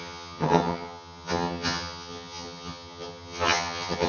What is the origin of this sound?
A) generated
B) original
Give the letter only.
A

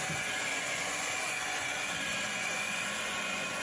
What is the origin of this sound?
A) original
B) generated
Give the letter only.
B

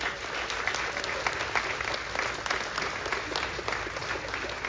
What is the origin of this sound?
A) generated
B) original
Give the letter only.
B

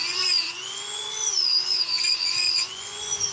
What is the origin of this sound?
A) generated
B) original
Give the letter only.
A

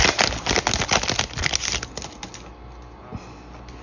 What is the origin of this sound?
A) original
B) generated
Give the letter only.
A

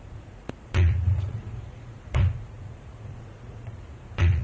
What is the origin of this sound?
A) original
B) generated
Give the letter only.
B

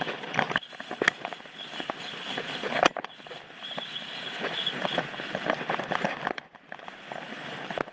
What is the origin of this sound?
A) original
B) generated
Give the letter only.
A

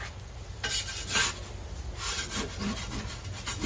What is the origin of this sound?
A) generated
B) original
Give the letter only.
B